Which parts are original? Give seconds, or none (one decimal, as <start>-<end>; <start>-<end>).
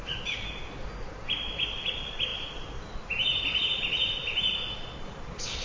0.0-5.6